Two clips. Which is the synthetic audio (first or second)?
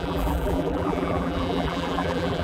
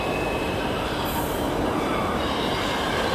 first